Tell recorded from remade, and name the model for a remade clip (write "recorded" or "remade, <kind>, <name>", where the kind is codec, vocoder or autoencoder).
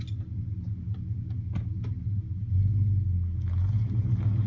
recorded